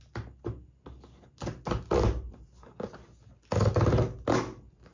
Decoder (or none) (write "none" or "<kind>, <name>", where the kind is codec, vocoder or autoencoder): none